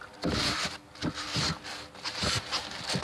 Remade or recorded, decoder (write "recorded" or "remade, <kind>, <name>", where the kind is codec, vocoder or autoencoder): recorded